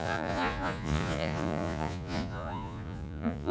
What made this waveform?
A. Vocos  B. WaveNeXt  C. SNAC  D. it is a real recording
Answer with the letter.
A